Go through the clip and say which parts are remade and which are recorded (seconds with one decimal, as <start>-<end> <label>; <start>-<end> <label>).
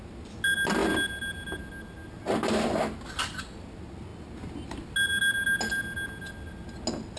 0.0-7.2 recorded